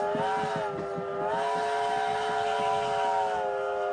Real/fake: real